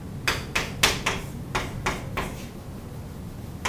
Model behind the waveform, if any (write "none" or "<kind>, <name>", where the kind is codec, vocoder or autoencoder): none